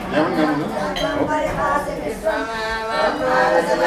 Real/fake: real